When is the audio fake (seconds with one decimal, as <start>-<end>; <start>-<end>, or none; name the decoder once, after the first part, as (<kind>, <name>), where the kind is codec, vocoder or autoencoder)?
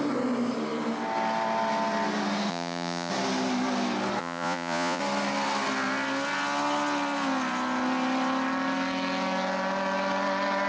2.5-3.1 (vocoder, Vocos); 4.2-5.0